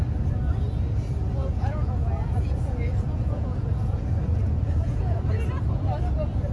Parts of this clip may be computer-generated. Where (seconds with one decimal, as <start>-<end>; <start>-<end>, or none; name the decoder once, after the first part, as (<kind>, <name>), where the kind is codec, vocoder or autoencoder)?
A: 1.4-5.3 (vocoder, Vocos)